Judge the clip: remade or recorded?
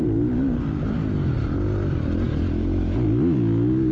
recorded